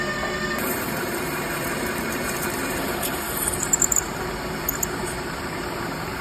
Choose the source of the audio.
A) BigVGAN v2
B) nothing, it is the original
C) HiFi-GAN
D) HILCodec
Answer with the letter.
A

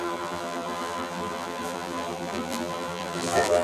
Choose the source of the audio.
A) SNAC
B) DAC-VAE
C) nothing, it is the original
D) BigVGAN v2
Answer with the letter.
D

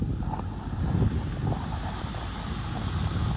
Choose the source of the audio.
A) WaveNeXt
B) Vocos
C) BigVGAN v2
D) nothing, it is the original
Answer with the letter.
D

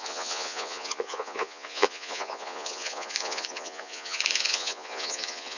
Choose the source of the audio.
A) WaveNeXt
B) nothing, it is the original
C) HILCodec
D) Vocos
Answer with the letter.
D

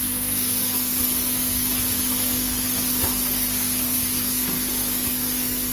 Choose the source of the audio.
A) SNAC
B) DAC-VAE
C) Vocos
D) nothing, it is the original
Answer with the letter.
A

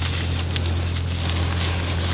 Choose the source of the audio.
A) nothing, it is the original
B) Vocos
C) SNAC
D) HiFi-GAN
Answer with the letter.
A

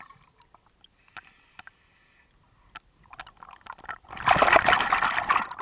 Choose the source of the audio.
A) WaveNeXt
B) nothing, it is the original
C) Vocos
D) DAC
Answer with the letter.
B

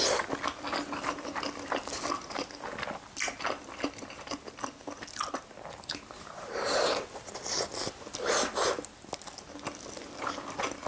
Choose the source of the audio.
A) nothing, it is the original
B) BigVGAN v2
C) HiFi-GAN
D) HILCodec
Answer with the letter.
A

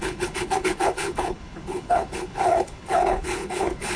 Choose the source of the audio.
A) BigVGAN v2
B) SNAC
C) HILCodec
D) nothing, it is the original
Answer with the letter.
C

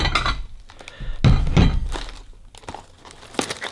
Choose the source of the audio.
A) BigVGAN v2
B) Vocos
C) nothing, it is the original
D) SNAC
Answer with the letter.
C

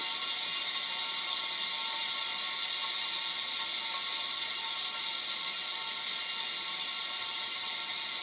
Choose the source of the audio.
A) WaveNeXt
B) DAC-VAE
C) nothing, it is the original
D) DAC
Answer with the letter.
C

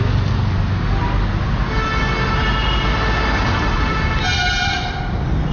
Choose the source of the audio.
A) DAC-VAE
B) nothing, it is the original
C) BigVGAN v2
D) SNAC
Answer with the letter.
B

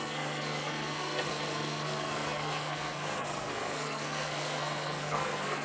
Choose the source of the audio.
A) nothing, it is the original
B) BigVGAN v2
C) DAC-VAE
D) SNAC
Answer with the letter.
D